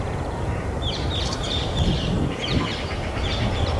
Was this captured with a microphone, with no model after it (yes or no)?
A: no